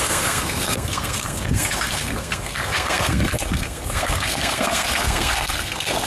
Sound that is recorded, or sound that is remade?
remade